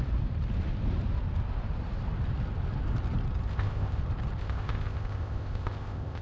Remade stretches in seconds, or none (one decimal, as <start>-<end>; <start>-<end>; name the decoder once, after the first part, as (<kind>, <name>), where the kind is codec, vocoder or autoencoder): 3.5-4.0 (codec, ZipCodec); 4.4-6.2